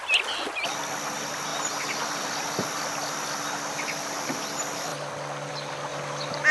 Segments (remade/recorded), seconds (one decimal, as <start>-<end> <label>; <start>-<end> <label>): 0.0-6.5 recorded

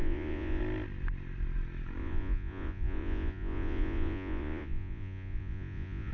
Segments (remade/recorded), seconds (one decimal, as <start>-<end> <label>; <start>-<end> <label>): 0.0-0.6 remade; 0.6-2.0 recorded; 2.0-6.1 remade

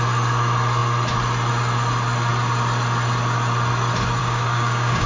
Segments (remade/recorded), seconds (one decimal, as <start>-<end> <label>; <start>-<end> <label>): 0.0-4.2 recorded; 4.2-5.1 remade

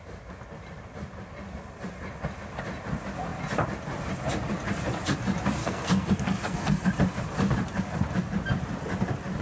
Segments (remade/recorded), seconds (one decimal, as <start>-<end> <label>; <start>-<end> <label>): 0.0-5.6 recorded; 5.6-6.9 remade; 6.9-9.4 recorded

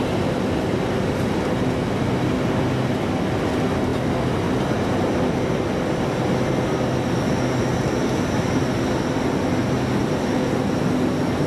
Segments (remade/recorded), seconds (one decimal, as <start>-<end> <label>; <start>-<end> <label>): 0.0-11.5 recorded

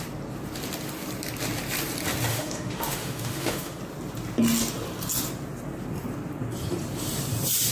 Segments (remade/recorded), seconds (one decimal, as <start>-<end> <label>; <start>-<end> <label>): 0.0-2.3 recorded; 2.3-3.8 remade; 3.8-7.7 recorded